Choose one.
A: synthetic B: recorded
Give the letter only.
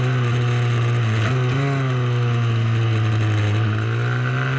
B